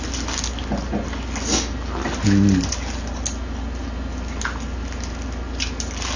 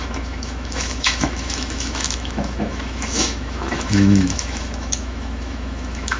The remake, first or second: second